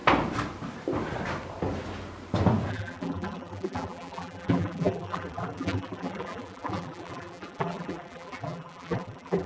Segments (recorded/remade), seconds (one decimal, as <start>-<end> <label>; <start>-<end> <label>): 0.0-2.7 recorded; 2.7-9.5 remade